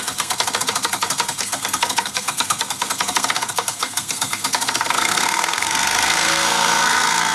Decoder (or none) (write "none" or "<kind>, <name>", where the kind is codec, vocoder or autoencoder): codec, SNAC